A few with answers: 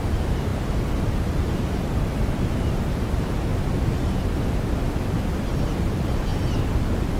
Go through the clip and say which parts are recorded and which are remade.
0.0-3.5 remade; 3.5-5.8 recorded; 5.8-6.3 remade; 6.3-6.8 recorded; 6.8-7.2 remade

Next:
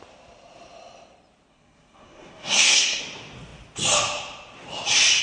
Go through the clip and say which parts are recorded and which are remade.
0.0-1.5 recorded; 1.5-3.0 remade; 3.0-5.2 recorded